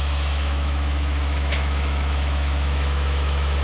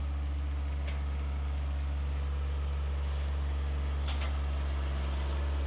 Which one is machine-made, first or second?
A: first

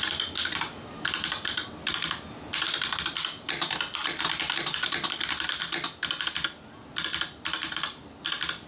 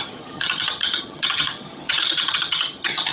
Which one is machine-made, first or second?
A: second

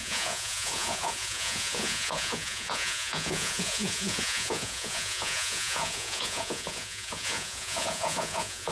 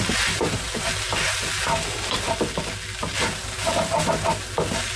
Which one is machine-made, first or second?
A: first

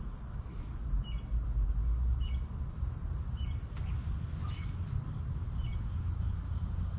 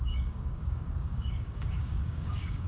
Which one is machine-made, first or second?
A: second